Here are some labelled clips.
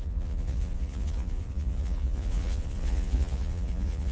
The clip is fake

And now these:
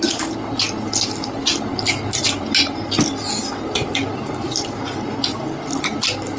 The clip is real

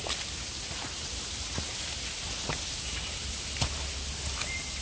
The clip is real